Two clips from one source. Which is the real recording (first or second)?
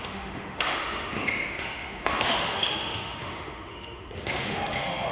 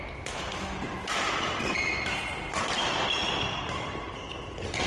second